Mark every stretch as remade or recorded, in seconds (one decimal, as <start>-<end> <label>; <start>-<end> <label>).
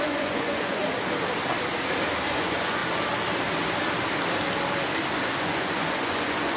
0.0-0.8 remade; 0.8-2.3 recorded; 2.3-2.8 remade; 2.8-5.4 recorded; 5.4-6.6 remade